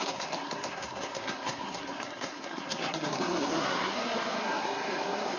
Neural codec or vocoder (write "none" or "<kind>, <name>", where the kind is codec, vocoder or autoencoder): codec, SNAC